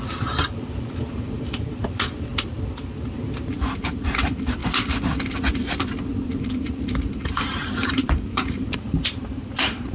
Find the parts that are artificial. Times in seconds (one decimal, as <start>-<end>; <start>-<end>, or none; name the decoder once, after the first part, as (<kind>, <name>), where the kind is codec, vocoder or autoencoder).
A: 0.0-2.3 (vocoder, BigVGAN v2); 2.8-4.6; 6.4-9.9